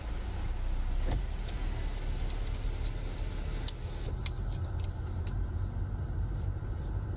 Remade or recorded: recorded